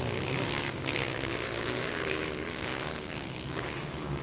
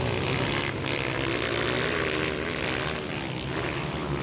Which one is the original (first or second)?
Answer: second